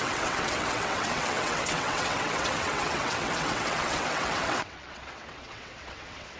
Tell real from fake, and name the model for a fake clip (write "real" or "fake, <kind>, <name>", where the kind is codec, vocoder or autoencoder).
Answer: fake, vocoder, WaveNeXt